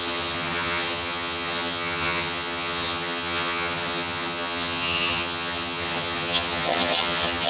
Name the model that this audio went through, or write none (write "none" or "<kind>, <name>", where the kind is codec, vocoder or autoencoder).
vocoder, HiFi-GAN